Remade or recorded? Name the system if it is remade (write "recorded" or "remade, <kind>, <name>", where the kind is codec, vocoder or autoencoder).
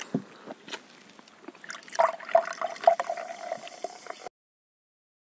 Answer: recorded